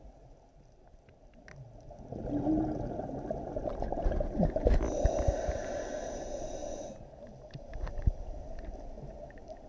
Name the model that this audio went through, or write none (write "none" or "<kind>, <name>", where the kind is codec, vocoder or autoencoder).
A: none